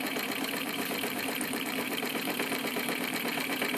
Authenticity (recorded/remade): remade